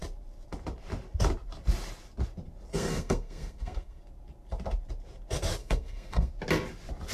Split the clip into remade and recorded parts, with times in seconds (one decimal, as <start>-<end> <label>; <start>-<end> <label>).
0.0-2.7 recorded; 2.7-4.0 remade; 4.0-5.6 recorded; 5.6-6.3 remade; 6.3-7.1 recorded